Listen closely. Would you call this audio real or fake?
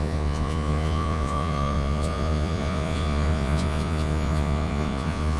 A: fake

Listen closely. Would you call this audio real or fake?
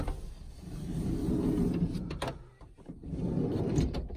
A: real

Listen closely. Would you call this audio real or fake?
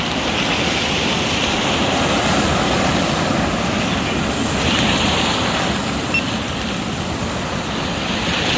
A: real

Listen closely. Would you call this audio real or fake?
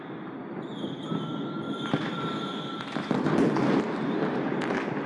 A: real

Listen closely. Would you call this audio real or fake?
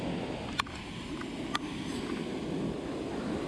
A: real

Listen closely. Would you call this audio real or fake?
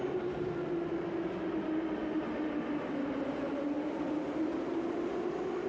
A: real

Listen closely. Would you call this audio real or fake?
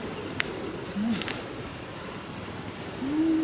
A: real